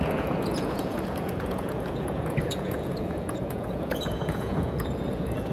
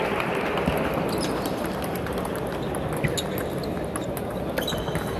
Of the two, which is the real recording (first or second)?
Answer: second